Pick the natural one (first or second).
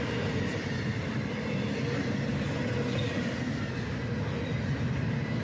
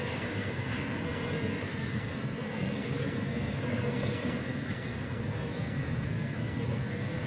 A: first